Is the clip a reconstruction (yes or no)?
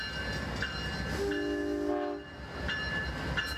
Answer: no